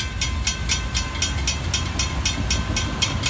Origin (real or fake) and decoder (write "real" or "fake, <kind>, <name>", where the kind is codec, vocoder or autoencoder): real